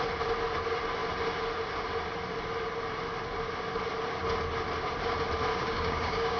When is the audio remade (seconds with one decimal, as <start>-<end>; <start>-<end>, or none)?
5.5-6.4